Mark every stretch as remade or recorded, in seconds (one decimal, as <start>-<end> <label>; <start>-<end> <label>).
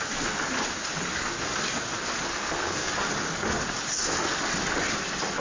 0.0-2.3 recorded; 2.3-2.9 remade; 2.9-5.4 recorded